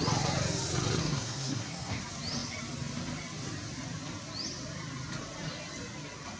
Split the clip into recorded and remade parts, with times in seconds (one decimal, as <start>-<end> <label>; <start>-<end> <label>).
0.0-1.0 recorded; 1.0-2.0 remade; 2.0-6.4 recorded